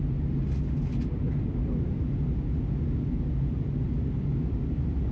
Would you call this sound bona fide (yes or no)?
yes